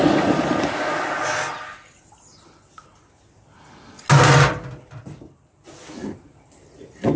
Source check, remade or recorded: recorded